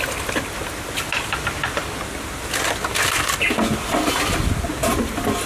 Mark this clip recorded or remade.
recorded